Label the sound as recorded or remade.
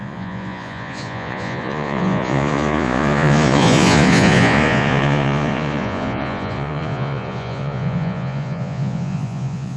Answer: remade